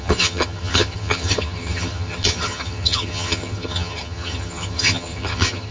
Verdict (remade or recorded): remade